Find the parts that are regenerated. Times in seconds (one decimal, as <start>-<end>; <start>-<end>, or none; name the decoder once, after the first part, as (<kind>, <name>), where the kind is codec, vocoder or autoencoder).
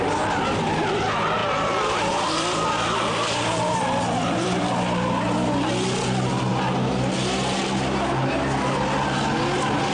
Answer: 1.4-5.7 (vocoder, BigVGAN v2)